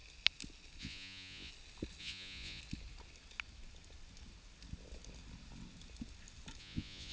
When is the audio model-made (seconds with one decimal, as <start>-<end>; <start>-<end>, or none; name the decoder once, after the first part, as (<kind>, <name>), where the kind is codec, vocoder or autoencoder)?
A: 0.8-1.5 (vocoder, Vocos); 2.0-2.6; 6.6-7.1